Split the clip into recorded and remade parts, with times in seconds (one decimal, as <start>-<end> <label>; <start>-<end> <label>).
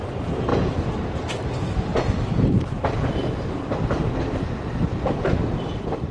0.0-0.5 remade; 0.5-4.2 recorded; 4.2-6.1 remade